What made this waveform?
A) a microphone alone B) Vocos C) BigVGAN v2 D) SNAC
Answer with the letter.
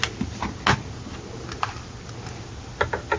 A